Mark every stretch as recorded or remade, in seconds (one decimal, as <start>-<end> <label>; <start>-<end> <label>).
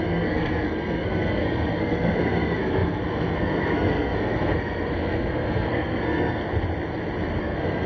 0.0-6.4 remade; 6.4-7.4 recorded; 7.4-7.9 remade